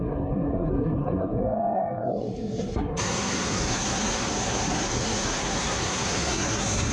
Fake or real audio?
fake